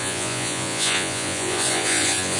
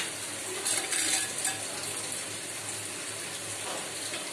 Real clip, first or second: second